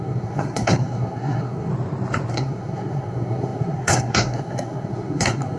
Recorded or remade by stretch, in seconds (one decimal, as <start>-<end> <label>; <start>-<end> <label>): 0.0-1.7 remade; 1.7-2.3 recorded; 2.3-5.6 remade

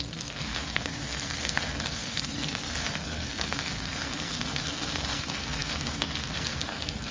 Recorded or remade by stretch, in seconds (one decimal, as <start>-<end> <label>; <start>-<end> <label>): 0.0-7.1 remade

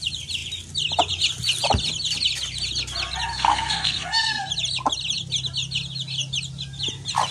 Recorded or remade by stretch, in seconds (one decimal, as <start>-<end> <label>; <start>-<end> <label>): 0.0-3.3 recorded; 3.3-4.5 remade; 4.5-7.3 recorded

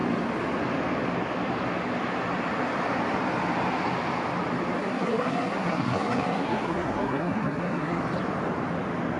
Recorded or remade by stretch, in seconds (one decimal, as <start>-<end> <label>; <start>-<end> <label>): 0.0-4.8 recorded; 4.8-8.0 remade; 8.0-9.2 recorded

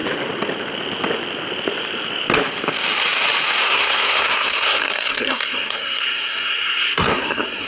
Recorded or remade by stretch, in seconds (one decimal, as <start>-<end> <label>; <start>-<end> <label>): 0.0-3.6 recorded; 3.6-7.7 remade

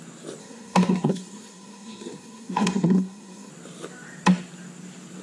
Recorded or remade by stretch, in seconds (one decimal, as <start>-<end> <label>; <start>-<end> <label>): 0.0-0.4 recorded; 0.4-3.5 remade; 3.5-5.2 recorded

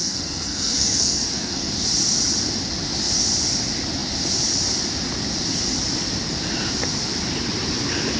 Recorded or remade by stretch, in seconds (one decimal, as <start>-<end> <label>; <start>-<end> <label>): 0.0-1.7 remade; 1.7-8.2 recorded